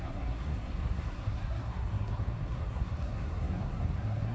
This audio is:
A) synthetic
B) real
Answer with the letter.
A